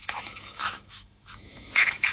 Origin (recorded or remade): remade